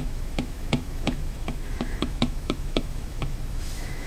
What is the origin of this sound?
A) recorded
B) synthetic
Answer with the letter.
B